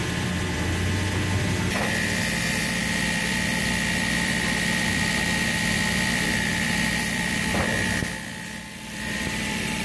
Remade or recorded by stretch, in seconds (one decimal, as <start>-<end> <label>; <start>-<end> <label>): 0.0-2.4 recorded; 2.4-8.0 remade; 8.0-8.7 recorded; 8.7-9.8 remade